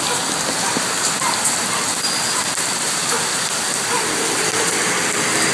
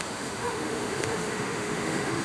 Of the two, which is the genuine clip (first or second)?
first